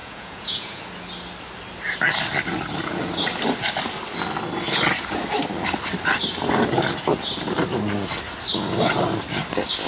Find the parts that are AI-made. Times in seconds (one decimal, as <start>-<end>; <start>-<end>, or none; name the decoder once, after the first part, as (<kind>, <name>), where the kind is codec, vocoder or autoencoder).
0.0-0.9 (vocoder, Vocos)